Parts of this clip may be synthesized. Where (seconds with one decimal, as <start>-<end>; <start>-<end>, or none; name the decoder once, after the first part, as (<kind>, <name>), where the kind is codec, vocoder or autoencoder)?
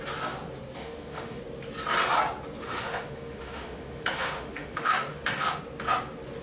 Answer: 0.8-1.4 (autoencoder, DAC-VAE); 2.6-5.6